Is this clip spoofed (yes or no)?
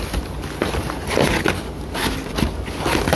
no